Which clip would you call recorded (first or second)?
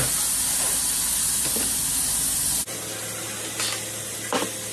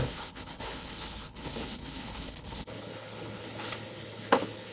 first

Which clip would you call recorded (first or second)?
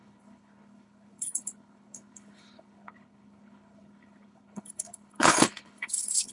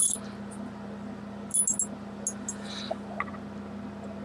second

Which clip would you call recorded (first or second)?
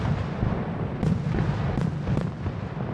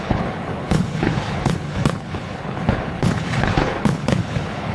first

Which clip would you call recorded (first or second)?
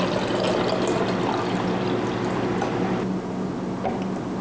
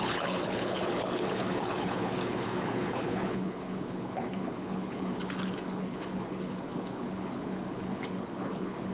first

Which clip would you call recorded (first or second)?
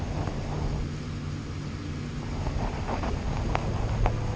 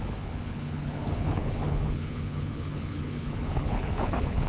first